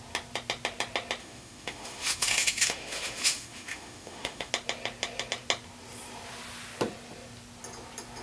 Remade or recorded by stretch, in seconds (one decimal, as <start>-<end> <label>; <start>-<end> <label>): 0.0-1.2 recorded; 1.2-4.5 remade; 4.5-8.2 recorded